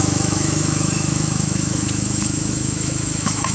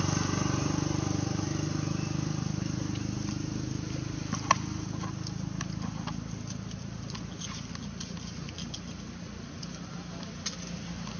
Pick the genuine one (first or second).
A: second